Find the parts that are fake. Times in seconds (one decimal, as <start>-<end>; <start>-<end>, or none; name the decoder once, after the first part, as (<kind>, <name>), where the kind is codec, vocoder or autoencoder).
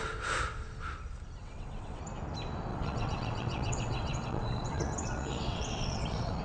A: 1.4-2.0 (vocoder, WaveNeXt); 2.7-6.4